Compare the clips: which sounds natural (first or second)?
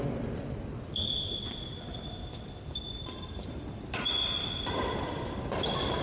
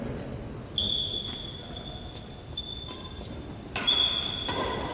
second